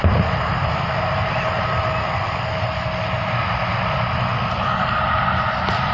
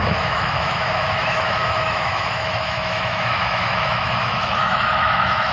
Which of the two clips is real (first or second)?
first